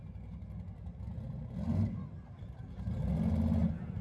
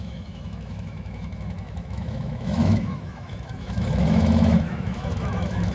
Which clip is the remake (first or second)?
second